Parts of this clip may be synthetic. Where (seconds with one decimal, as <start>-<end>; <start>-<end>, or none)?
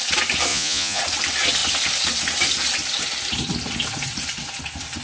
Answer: 0.5-1.0